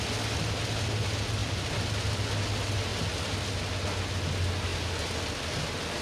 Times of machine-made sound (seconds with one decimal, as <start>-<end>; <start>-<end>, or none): 1.4-2.4